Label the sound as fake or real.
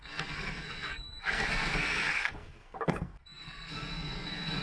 fake